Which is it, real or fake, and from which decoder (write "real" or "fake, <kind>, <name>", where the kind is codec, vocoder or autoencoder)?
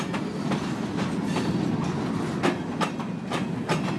real